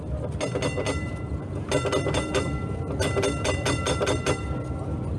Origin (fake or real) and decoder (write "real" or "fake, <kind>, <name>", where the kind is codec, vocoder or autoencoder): real